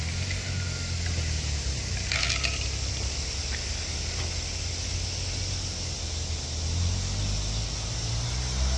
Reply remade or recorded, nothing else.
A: recorded